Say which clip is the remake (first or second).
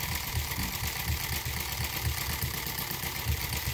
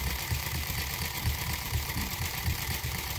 second